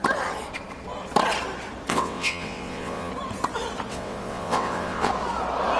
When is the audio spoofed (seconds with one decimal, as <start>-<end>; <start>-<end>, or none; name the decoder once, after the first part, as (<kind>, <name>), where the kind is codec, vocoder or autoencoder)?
1.9-3.1 (vocoder, WaveNeXt); 3.9-5.1